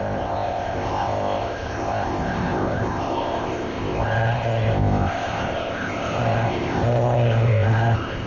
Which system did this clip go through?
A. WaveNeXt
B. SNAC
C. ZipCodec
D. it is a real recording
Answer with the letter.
C